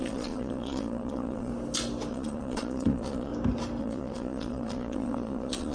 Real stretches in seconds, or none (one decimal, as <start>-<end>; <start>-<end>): 1.5-2.1; 3.3-3.8